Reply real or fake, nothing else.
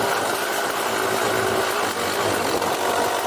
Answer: real